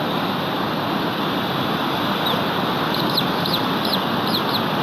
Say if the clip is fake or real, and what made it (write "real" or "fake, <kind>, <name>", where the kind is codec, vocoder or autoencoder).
real